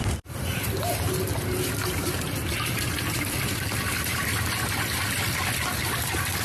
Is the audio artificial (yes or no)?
no